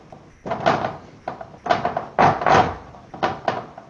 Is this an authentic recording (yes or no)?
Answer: yes